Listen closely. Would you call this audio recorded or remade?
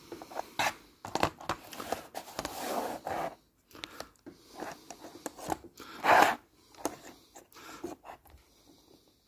recorded